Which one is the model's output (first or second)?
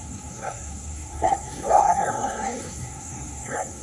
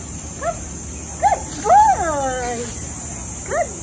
first